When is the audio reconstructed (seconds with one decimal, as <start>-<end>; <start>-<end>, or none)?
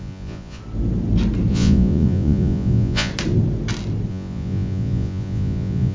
0.0-0.6; 1.5-3.1; 4.1-5.9